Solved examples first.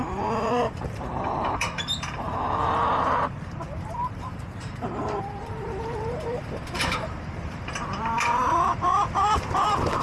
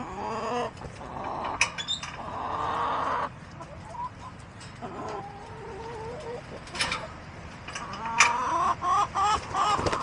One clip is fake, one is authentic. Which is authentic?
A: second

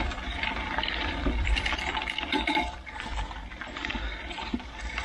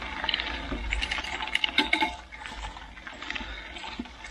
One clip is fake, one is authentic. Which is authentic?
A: second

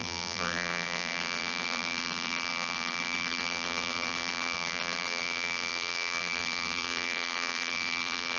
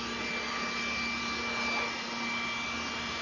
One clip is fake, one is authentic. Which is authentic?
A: second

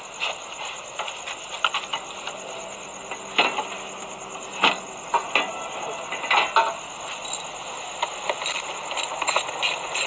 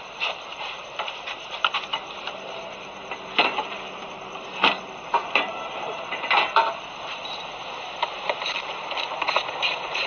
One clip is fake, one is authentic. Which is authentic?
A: first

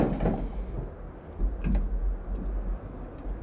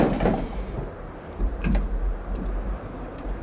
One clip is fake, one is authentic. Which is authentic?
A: first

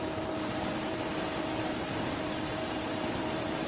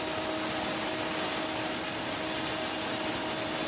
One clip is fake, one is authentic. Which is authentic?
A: second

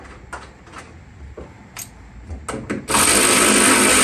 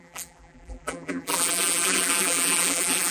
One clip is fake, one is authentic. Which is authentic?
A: first